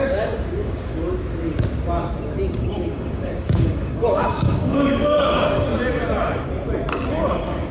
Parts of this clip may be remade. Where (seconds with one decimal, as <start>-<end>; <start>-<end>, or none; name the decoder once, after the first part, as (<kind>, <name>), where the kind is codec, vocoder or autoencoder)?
0.0-0.9 (codec, DAC); 2.6-5.7; 7.1-7.7